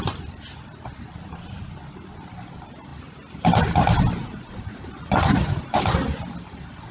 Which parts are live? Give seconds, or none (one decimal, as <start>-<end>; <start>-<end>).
0.0-4.2; 5.6-6.9